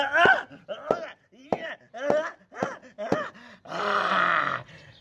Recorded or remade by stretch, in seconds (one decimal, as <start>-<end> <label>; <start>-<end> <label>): 0.0-5.0 recorded